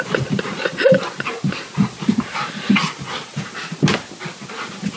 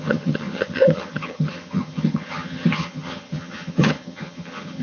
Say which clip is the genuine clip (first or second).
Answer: first